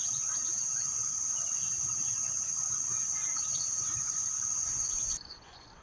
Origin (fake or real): fake